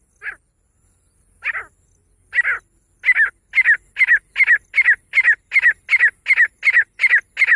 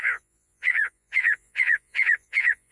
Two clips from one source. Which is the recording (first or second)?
first